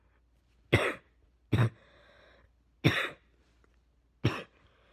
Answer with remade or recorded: recorded